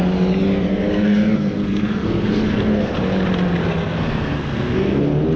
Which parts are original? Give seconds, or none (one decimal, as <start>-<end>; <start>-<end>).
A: 0.0-0.7; 2.9-3.6; 5.0-5.4